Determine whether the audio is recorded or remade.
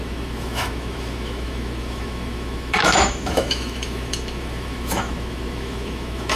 remade